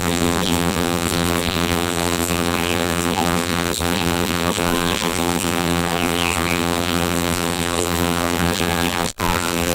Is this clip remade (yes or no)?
yes